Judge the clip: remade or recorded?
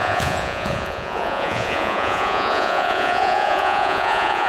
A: remade